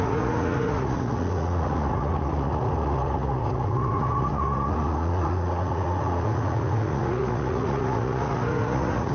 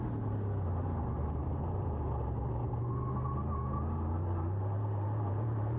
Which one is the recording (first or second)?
second